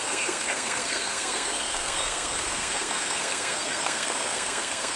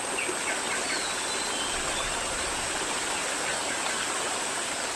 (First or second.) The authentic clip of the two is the second